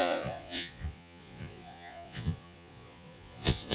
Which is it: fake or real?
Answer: fake